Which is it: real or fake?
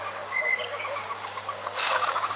fake